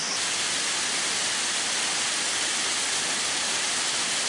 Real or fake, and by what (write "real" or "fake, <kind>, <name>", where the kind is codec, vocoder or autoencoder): real